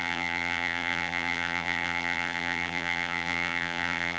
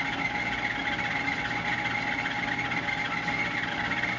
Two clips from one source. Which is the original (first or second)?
second